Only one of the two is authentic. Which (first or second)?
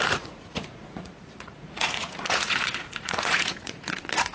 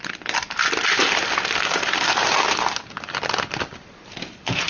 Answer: second